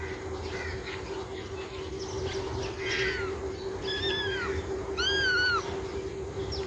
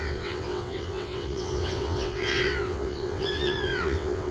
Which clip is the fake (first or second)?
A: second